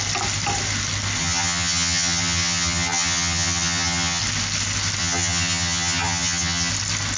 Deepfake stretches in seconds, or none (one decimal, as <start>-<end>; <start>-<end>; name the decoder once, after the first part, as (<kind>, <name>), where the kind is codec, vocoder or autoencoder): 1.2-4.2 (vocoder, HiFi-GAN); 5.0-6.7